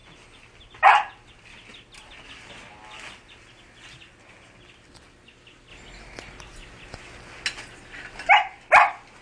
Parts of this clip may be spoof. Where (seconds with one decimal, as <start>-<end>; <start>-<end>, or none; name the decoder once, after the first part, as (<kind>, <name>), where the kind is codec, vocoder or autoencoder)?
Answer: none